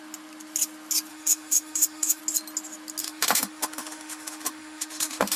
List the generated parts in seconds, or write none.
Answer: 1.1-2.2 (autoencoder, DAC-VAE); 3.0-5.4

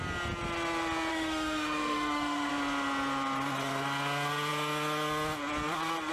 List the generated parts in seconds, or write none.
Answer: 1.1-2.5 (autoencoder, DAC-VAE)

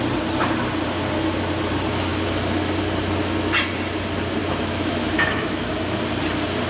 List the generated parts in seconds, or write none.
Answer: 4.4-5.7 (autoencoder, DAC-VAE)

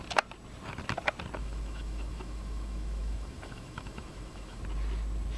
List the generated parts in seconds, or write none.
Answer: 1.4-4.6 (autoencoder, DAC-VAE)